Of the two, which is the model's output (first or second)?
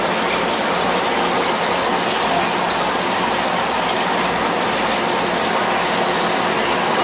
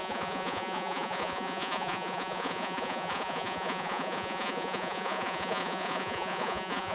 second